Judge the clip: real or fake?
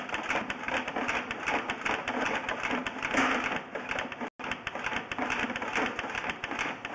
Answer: real